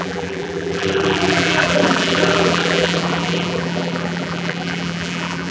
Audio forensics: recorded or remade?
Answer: remade